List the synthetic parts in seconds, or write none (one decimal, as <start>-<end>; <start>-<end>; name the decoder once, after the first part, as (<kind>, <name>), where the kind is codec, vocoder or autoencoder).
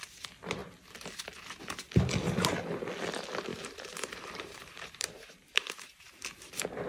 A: 3.5-6.5 (vocoder, BigVGAN v2)